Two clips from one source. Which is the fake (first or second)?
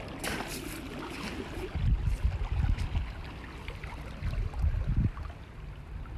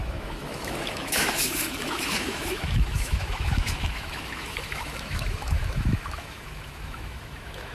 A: second